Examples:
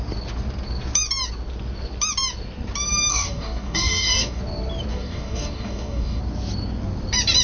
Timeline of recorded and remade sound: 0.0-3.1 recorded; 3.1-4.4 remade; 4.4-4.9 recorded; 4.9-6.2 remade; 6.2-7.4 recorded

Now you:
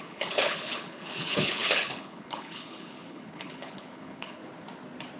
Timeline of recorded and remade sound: 0.0-4.4 remade; 4.4-5.2 recorded

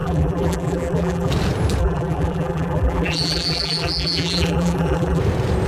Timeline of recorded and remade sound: 0.0-1.3 remade; 1.3-1.8 recorded; 1.8-5.2 remade; 5.2-5.7 recorded

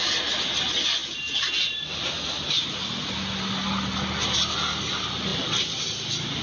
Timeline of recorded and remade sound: 0.0-6.4 recorded

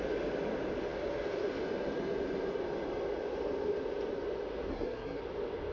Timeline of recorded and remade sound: 0.0-4.7 recorded; 4.7-5.2 remade; 5.2-5.7 recorded